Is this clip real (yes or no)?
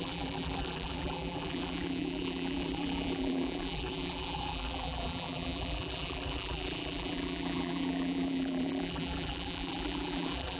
no